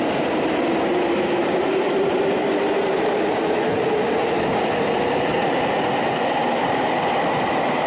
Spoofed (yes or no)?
no